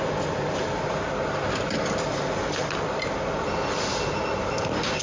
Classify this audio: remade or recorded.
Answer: recorded